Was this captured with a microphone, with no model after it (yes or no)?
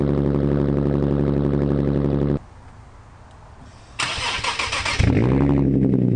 yes